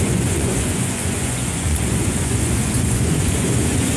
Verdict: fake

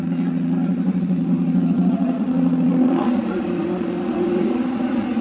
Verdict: fake